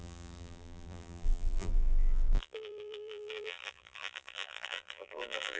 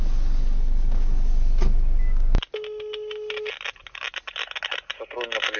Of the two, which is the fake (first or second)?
first